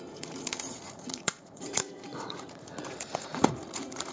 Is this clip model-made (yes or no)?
yes